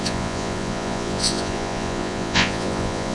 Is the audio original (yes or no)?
no